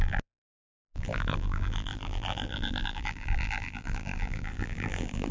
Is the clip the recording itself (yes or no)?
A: no